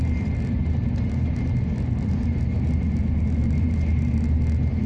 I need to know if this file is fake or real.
real